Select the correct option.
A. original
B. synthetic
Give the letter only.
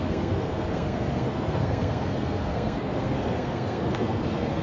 B